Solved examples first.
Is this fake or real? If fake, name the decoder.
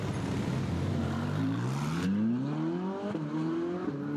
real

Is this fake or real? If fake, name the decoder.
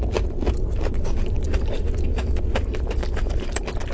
real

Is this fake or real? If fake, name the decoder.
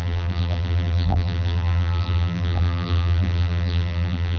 fake, vocoder, BigVGAN v2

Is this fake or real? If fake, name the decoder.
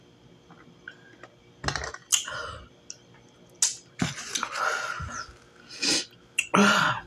real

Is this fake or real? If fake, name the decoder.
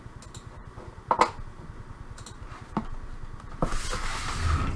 real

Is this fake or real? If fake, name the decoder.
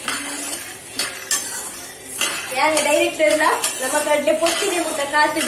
real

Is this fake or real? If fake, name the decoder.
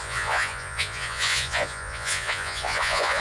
fake, vocoder, Vocos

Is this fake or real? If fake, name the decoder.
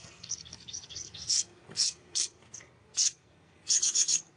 fake, codec, SNAC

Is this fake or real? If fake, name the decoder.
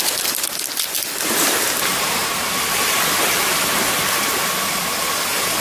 real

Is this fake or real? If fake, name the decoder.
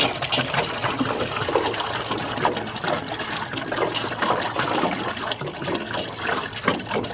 real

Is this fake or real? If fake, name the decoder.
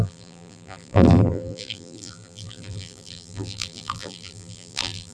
fake, vocoder, BigVGAN v2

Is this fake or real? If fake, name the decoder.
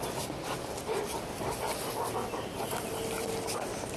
real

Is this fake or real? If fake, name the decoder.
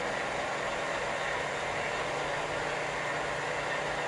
real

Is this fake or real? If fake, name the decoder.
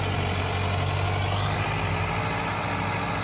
real